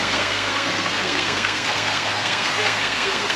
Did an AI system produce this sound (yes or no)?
yes